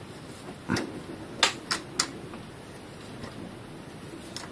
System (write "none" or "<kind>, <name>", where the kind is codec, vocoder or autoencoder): none